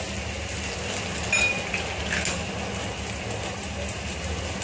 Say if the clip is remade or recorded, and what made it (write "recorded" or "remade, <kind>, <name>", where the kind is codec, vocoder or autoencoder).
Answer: recorded